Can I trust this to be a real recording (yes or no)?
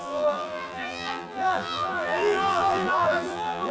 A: no